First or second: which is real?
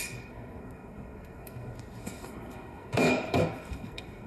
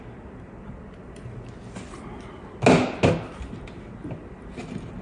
second